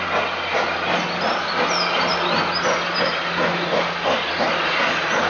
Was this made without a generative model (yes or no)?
yes